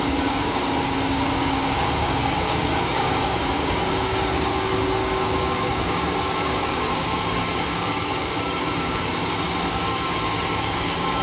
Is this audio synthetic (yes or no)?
yes